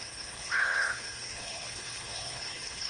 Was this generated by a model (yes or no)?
yes